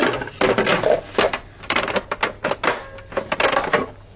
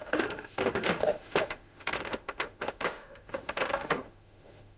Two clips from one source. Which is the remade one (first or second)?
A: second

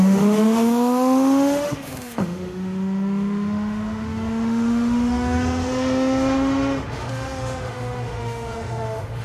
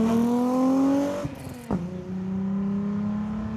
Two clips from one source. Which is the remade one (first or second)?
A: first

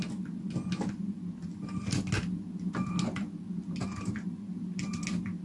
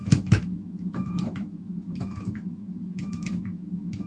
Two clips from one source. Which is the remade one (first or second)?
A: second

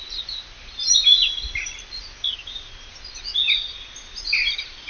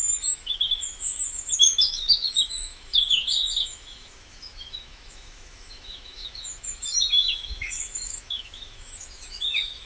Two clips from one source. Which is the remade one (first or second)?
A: second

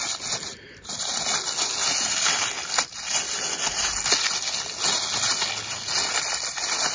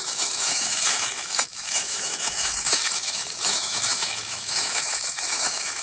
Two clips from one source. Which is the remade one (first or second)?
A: second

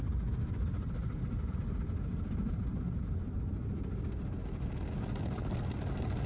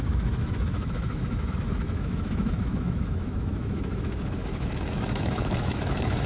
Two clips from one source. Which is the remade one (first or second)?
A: second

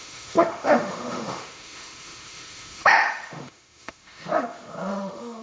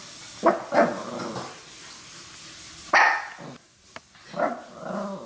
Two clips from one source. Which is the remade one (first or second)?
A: first